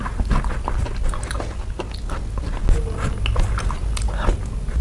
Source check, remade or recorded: recorded